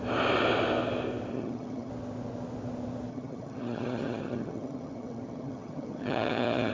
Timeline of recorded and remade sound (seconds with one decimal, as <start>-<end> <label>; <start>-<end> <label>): 0.0-1.3 recorded; 1.3-1.9 remade; 1.9-3.1 recorded; 3.1-6.7 remade